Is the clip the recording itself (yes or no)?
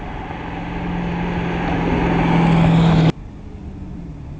yes